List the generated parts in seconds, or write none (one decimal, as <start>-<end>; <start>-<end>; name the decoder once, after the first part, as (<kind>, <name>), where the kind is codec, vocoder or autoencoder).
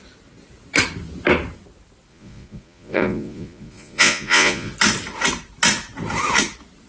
2.1-4.7 (vocoder, Vocos)